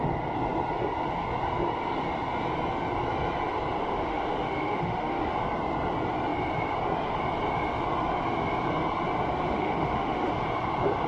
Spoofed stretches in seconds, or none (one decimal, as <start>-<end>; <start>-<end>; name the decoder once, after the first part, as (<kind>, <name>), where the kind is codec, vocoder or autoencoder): 3.8-5.2 (autoencoder, DAC-VAE); 9.5-10.3